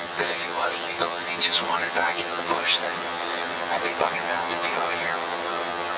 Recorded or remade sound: remade